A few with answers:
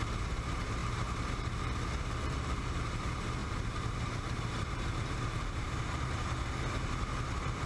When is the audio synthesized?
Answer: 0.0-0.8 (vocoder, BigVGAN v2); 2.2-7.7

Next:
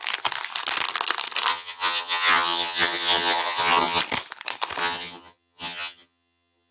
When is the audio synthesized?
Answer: 1.5-4.0 (vocoder, HiFi-GAN); 4.8-6.7